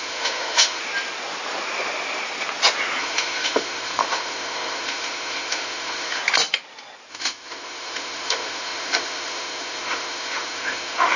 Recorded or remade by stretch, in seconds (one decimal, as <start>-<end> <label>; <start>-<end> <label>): 0.0-0.8 remade; 0.8-3.0 recorded; 3.0-6.2 remade; 6.2-7.1 recorded; 7.1-11.2 remade